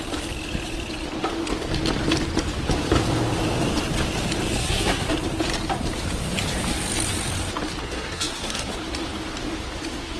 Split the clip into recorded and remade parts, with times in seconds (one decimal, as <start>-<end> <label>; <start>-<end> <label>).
0.0-4.6 recorded; 4.6-5.1 remade; 5.1-7.8 recorded; 7.8-8.7 remade; 8.7-10.2 recorded